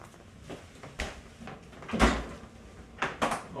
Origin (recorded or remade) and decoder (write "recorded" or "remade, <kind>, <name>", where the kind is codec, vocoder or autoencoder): recorded